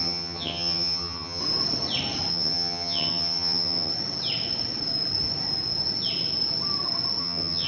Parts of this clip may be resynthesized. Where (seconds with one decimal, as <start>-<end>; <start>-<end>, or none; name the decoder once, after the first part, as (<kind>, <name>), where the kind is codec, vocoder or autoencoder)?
0.0-1.4 (vocoder, HiFi-GAN); 2.3-3.9; 7.2-7.7